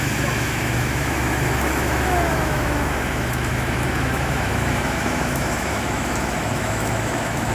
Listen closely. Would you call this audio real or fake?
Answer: fake